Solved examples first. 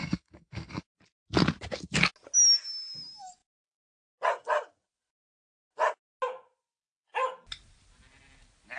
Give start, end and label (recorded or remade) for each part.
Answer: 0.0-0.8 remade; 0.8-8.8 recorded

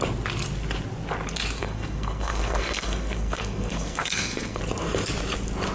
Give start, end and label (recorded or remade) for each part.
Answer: 0.0-1.6 recorded; 1.6-4.6 remade; 4.6-5.7 recorded

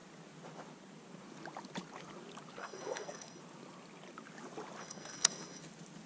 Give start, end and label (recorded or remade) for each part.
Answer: 0.0-2.6 recorded; 2.6-3.4 remade; 3.4-4.8 recorded; 4.8-5.6 remade; 5.6-6.1 recorded

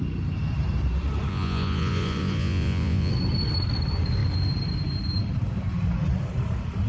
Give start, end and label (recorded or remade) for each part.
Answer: 0.0-1.3 recorded; 1.3-3.1 remade; 3.1-6.9 recorded

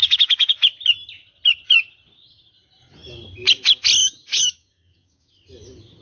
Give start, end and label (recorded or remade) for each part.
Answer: 0.0-0.5 remade; 0.5-4.0 recorded; 4.0-5.3 remade; 5.3-6.0 recorded